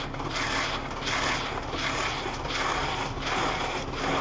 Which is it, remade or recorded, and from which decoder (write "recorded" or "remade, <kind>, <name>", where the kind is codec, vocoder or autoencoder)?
recorded